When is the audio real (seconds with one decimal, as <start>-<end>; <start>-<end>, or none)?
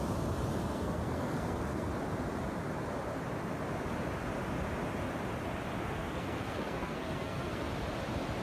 0.0-0.6; 1.9-5.8; 7.7-8.4